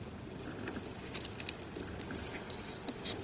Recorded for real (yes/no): yes